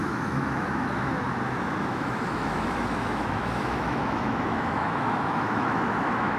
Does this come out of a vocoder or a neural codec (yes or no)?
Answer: yes